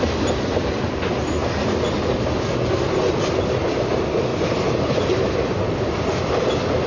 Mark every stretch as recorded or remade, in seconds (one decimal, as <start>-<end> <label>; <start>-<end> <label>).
0.0-4.3 recorded; 4.3-5.9 remade; 5.9-6.9 recorded